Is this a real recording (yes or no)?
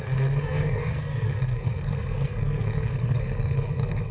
no